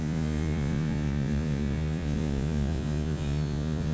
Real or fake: fake